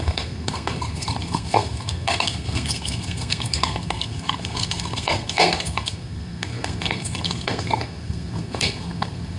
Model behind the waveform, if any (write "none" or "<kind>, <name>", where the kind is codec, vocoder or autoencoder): codec, SNAC